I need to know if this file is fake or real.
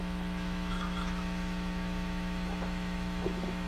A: fake